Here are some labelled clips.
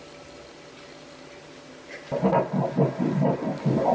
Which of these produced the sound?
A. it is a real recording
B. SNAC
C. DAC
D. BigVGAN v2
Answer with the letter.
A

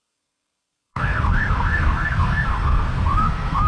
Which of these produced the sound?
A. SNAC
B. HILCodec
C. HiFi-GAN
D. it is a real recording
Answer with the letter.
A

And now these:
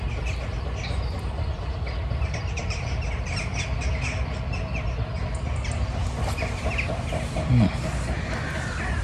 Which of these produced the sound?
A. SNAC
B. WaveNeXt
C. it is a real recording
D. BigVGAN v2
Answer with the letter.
C